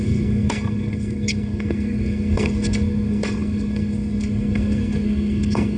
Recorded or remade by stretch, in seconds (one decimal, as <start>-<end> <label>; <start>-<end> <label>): 0.0-5.8 remade